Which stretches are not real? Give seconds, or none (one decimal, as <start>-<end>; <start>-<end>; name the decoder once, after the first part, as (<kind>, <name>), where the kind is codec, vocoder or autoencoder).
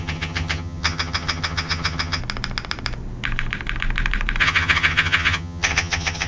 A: 0.0-2.2 (vocoder, HiFi-GAN); 4.4-6.3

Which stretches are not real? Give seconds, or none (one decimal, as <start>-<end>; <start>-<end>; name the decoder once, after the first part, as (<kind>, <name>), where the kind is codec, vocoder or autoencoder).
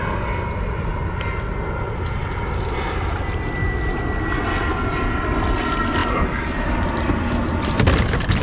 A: none